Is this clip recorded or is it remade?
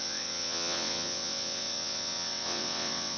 remade